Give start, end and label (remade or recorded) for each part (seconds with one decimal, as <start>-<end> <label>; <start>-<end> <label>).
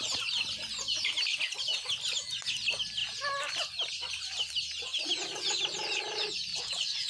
0.0-6.5 recorded; 6.5-7.1 remade